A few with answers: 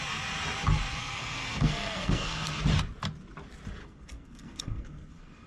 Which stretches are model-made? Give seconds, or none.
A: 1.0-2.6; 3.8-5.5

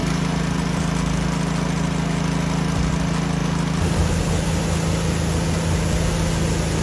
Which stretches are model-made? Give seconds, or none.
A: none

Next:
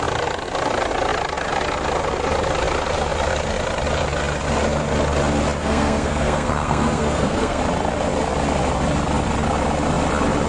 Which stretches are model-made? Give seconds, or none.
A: 5.6-7.6